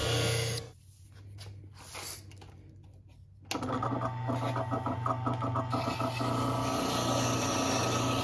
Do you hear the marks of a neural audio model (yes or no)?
no